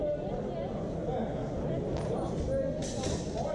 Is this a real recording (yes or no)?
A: yes